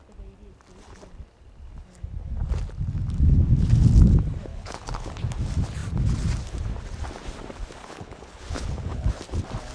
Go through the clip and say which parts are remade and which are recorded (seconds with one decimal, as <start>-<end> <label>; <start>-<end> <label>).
0.0-4.5 recorded; 4.5-5.2 remade; 5.2-7.8 recorded; 7.8-9.2 remade; 9.2-9.7 recorded